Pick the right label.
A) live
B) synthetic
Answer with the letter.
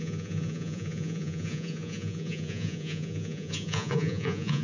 B